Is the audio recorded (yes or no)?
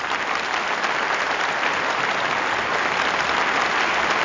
yes